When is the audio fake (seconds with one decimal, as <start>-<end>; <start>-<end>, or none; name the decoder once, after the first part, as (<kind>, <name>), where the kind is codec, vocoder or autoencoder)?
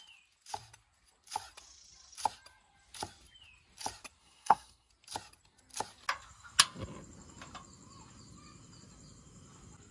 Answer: 4.2-4.9 (codec, SNAC)